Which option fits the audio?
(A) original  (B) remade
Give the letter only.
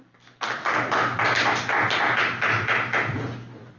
A